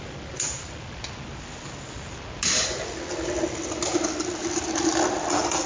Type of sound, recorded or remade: recorded